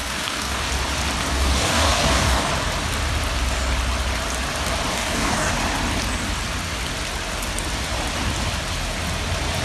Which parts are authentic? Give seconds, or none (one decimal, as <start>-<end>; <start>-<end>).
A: 0.7-1.3; 2.5-4.9; 5.5-9.6